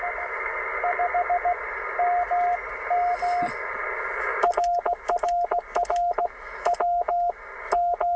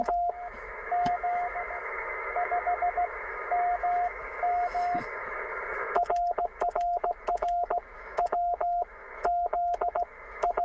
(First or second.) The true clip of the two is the first